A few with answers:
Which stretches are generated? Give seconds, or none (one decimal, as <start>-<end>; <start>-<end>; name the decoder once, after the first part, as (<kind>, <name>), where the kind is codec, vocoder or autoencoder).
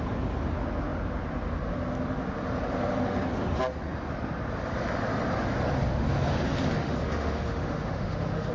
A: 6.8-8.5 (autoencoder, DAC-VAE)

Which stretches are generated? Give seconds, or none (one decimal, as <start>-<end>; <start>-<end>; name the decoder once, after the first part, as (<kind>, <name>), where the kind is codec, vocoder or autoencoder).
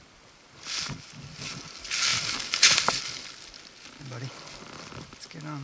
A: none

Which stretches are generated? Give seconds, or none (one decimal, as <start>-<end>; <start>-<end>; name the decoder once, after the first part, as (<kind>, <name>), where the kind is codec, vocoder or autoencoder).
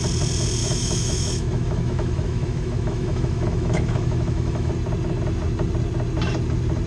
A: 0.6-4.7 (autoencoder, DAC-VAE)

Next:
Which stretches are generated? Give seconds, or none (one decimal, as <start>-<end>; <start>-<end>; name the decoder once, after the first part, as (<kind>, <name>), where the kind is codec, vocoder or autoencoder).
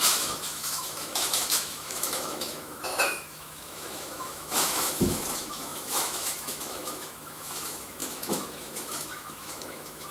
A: 0.0-10.1 (autoencoder, DAC-VAE)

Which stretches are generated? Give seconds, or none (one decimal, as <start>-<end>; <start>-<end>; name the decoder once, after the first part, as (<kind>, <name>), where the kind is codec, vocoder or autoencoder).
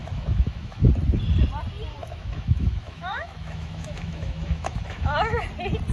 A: 0.0-0.9 (autoencoder, DAC-VAE); 2.0-5.4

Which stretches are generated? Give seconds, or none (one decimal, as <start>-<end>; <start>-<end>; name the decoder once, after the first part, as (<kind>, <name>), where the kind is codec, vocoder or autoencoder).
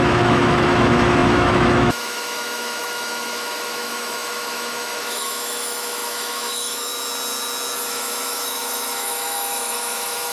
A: 0.0-6.9 (autoencoder, DAC-VAE); 7.9-10.3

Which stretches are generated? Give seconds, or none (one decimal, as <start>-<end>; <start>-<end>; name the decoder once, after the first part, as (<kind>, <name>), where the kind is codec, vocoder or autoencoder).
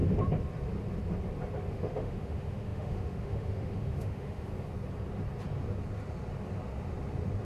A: 1.7-4.5 (autoencoder, DAC-VAE)